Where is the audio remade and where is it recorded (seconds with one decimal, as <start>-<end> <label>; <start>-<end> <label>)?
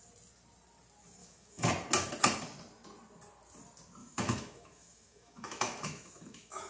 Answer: 0.0-1.2 recorded; 1.2-1.7 remade; 1.7-4.0 recorded; 4.0-6.7 remade